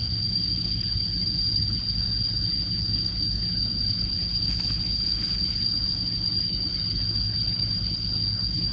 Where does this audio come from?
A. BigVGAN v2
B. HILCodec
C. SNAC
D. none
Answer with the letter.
B